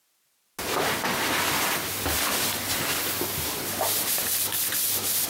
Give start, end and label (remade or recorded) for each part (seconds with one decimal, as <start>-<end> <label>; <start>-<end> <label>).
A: 0.0-5.3 recorded